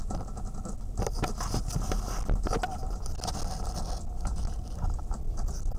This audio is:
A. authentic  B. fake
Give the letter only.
A